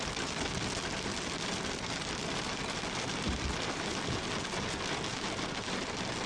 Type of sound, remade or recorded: recorded